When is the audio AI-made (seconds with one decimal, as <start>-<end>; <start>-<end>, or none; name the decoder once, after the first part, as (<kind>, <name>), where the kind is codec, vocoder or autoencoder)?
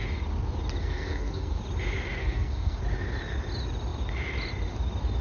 0.8-1.6 (codec, SNAC); 2.2-2.8